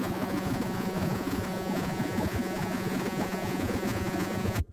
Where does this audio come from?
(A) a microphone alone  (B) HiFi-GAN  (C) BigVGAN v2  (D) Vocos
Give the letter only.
D